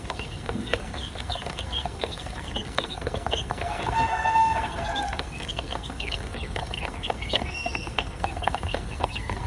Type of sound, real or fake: fake